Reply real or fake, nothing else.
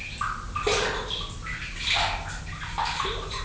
real